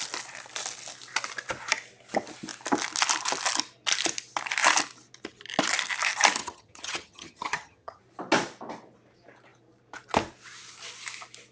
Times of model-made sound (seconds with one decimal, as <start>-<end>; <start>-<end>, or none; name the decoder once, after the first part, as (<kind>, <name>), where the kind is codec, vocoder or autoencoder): 6.4-8.0 (vocoder, HiFi-GAN)

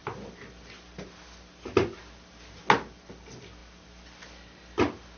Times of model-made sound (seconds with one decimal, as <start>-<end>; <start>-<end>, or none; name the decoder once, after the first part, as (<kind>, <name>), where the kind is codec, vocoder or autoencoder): none

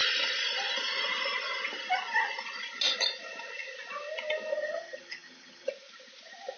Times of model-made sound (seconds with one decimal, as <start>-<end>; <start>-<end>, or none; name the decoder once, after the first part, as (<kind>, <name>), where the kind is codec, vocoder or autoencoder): 4.5-5.7 (vocoder, HiFi-GAN)

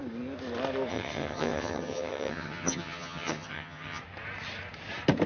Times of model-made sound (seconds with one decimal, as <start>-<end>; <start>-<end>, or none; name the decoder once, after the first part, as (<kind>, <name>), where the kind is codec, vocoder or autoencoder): 0.9-4.0 (vocoder, HiFi-GAN)

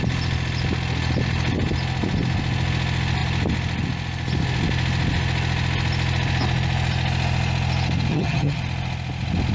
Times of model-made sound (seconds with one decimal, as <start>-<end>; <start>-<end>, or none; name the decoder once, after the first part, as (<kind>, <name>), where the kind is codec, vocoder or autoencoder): 8.1-8.6 (vocoder, HiFi-GAN)